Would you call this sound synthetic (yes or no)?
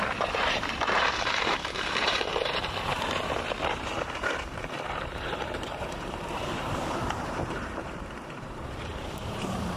yes